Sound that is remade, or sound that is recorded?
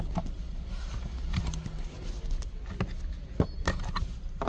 recorded